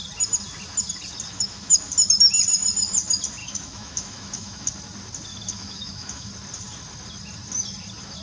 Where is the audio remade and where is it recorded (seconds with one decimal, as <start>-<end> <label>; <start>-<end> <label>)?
0.0-1.3 recorded; 1.3-1.8 remade; 1.8-3.4 recorded; 3.4-4.7 remade; 4.7-5.3 recorded; 5.3-6.3 remade; 6.3-8.2 recorded